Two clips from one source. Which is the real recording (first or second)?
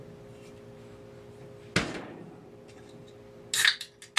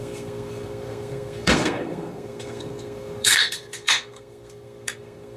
first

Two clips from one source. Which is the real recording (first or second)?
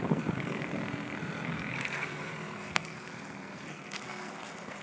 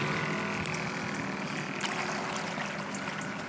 second